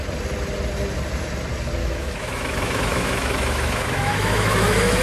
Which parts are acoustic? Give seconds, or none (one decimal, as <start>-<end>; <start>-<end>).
0.0-1.8